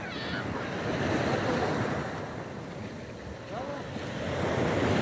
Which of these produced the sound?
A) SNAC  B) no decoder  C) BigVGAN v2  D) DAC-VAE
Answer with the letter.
B